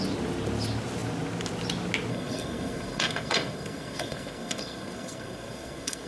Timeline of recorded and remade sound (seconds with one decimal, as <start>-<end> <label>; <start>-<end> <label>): 0.0-2.1 recorded; 2.1-6.1 remade